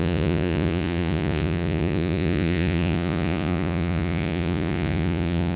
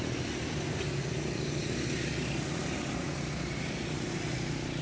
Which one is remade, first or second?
first